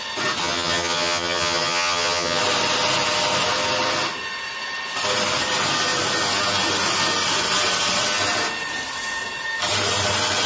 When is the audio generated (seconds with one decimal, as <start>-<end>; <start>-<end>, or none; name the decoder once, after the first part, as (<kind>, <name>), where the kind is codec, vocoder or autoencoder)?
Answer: 0.4-2.4 (vocoder, HiFi-GAN)